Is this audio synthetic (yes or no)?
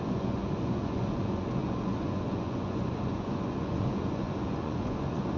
yes